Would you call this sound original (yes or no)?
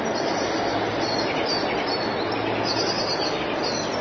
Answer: yes